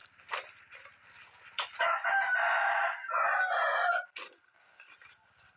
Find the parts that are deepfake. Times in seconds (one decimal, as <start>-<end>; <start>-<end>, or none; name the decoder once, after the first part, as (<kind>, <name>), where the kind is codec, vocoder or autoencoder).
none